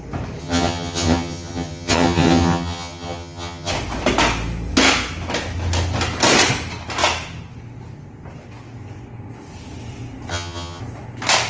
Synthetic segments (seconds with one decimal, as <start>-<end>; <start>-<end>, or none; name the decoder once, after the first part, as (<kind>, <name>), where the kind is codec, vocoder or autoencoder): 0.4-3.7 (vocoder, HiFi-GAN); 10.3-10.8